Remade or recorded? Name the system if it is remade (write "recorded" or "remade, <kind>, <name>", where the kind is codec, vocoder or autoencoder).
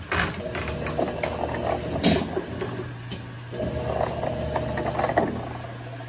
recorded